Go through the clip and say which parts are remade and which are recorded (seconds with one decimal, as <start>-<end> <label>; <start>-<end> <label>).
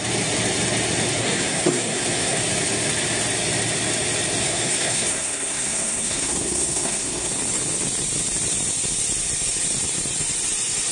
0.0-1.2 recorded; 1.2-2.4 remade; 2.4-4.4 recorded; 4.4-7.3 remade; 7.3-10.9 recorded